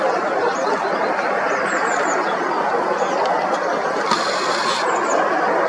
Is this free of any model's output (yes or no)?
yes